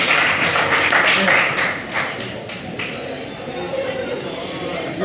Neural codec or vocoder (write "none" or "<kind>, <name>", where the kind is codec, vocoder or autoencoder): vocoder, BigVGAN v2